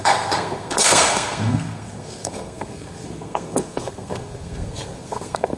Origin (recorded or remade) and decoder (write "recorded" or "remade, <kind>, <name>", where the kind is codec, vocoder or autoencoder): remade, codec, SNAC